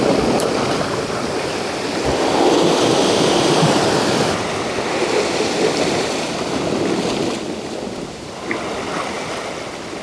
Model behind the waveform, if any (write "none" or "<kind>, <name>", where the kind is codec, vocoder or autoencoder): none